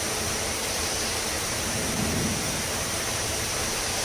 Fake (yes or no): yes